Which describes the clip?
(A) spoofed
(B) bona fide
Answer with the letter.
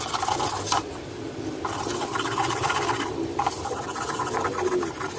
B